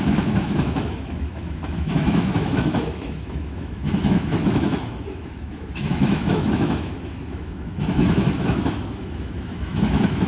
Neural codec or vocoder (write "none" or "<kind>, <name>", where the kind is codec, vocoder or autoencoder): autoencoder, DAC-VAE